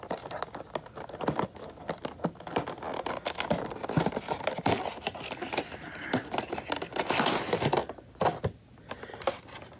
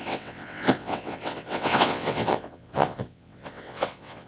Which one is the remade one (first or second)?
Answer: second